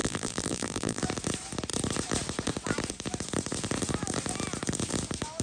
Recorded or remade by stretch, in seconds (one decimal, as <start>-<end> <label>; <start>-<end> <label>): 0.0-1.0 remade; 1.0-5.4 recorded